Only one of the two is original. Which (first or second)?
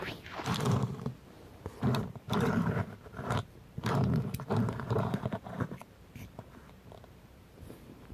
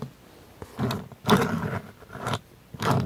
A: second